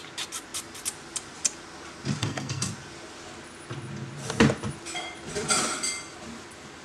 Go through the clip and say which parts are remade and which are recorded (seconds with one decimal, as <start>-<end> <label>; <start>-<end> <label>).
0.0-2.2 recorded; 2.2-2.7 remade; 2.7-6.8 recorded